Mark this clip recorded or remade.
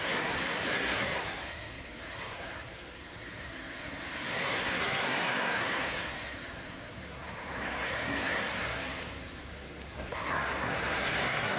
remade